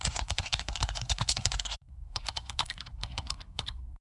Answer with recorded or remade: remade